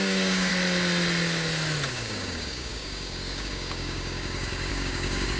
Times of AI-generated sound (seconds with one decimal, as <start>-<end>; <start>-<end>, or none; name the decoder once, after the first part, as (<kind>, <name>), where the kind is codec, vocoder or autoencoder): 0.0-0.5 (codec, DAC); 1.9-5.4